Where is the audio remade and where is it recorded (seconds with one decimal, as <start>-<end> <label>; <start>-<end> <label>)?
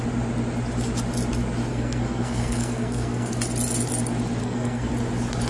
0.0-1.7 recorded; 1.7-3.3 remade; 3.3-4.4 recorded; 4.4-4.9 remade; 4.9-5.5 recorded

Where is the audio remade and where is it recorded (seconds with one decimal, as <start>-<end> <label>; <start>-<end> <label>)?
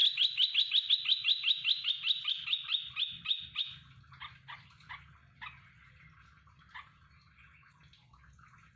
0.0-8.8 recorded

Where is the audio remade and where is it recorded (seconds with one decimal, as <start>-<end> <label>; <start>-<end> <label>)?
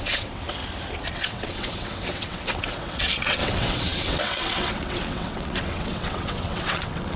0.0-0.6 remade; 0.6-1.1 recorded; 1.1-7.2 remade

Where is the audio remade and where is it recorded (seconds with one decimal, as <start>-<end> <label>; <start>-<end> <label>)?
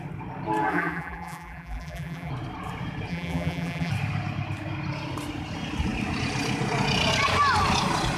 0.0-0.7 recorded; 0.7-2.3 remade; 2.3-3.1 recorded; 3.1-3.9 remade; 3.9-8.2 recorded